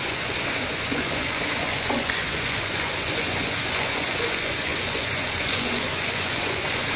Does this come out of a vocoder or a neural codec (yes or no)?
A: yes